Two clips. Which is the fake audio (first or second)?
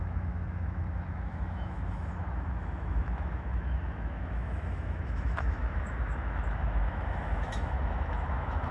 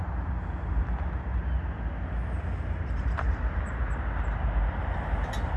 first